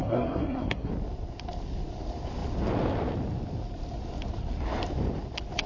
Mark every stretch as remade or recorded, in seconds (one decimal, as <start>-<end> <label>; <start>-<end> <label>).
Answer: 0.0-0.9 remade; 0.9-5.7 recorded